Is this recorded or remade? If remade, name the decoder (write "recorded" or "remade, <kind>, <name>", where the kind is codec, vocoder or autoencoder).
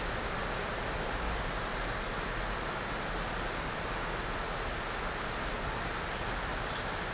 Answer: recorded